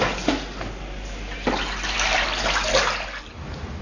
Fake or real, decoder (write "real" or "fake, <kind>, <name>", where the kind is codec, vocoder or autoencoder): real